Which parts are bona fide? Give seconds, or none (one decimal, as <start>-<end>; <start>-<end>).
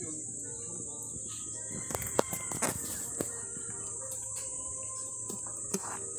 0.0-6.2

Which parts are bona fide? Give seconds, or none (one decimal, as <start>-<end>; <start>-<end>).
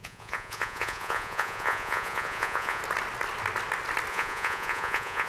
2.8-4.1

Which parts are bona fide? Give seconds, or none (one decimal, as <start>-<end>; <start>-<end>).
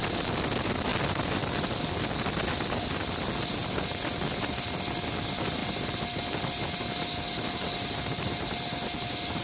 0.0-9.4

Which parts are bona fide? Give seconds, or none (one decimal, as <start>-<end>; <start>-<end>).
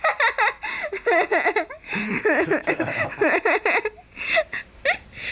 0.0-1.3; 3.8-5.3